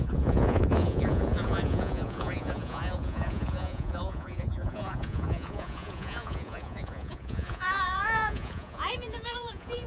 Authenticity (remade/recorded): remade